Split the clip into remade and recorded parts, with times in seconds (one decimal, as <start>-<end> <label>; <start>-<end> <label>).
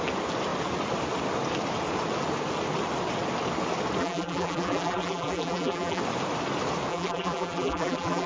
0.0-4.0 recorded; 4.0-6.0 remade; 6.0-6.9 recorded; 6.9-8.3 remade